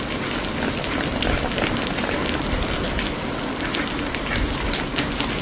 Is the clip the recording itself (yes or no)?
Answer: yes